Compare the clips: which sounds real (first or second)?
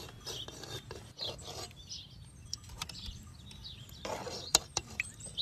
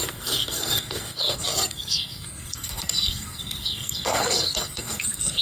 first